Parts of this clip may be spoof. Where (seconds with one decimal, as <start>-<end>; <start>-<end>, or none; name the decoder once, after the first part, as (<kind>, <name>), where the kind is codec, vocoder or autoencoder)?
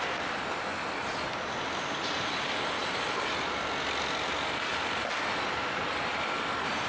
none